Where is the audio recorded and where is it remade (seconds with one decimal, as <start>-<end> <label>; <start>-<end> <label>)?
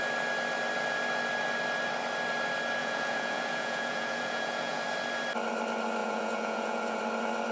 0.0-2.8 recorded; 2.8-4.8 remade; 4.8-6.0 recorded; 6.0-7.0 remade; 7.0-7.5 recorded